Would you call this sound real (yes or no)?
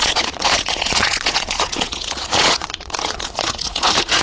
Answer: no